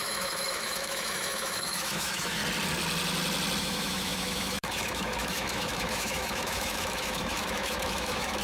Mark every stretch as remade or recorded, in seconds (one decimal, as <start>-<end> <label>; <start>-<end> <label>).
0.0-2.4 remade; 2.4-3.6 recorded; 3.6-8.4 remade